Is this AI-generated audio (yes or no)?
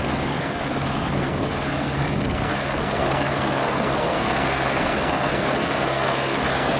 yes